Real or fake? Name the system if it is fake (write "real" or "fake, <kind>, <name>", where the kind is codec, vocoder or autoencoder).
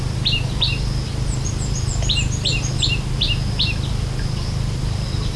real